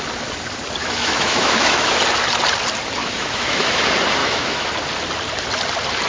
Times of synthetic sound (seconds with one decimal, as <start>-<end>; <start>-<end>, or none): 0.8-2.0; 3.0-3.8; 4.2-4.7